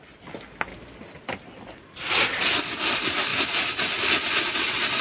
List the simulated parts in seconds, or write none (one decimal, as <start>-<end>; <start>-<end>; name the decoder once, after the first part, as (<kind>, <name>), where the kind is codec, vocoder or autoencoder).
none